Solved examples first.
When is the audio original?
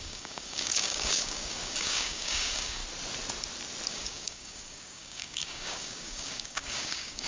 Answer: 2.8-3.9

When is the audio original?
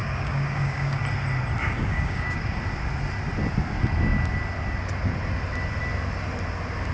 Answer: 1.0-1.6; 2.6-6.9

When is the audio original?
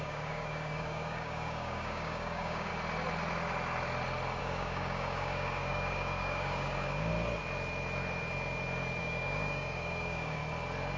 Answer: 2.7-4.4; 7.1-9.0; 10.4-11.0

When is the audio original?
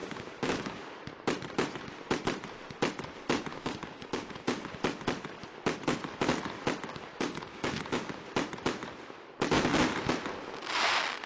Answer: 0.8-3.5; 4.7-6.9; 8.3-11.3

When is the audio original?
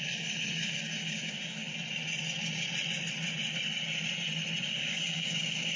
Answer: 1.7-4.6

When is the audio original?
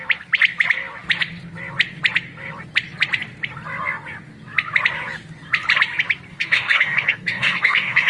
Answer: 0.0-6.3